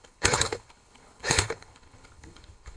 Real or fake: fake